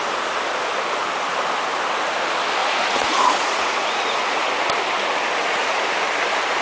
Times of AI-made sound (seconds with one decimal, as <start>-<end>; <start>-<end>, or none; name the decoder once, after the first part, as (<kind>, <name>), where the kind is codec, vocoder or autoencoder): 2.6-4.5 (vocoder, Vocos); 5.4-5.9